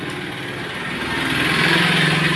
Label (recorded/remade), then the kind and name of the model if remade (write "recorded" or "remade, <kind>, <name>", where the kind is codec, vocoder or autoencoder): recorded